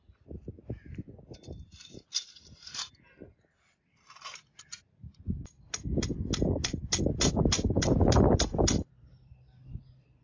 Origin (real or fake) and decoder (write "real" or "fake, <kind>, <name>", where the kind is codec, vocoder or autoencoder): fake, vocoder, BigVGAN v2